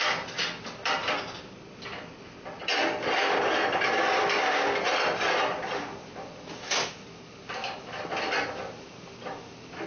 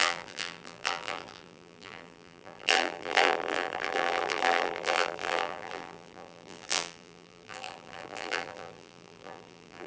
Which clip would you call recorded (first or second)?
first